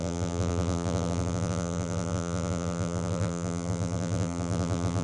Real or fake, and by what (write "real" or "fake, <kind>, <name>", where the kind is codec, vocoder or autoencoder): fake, vocoder, BigVGAN v2